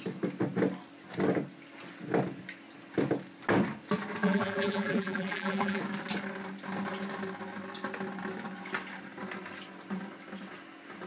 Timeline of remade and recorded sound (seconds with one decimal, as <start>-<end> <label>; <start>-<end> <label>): 0.0-4.2 recorded; 4.2-5.8 remade; 5.8-11.1 recorded